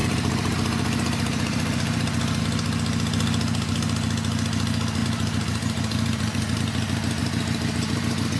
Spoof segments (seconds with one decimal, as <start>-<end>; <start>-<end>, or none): 0.0-2.4; 5.0-6.6; 7.2-8.4